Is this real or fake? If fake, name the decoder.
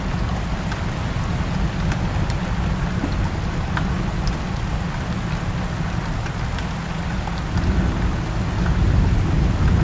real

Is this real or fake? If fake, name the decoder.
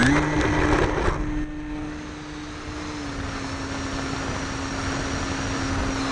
real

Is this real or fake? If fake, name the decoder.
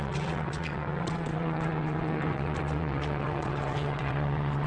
fake, vocoder, WaveNeXt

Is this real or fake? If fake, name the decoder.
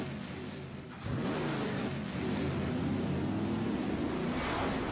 real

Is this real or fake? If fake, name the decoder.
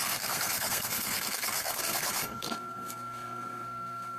fake, codec, SNAC